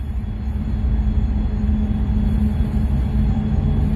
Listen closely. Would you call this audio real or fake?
real